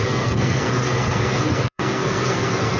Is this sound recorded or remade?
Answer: remade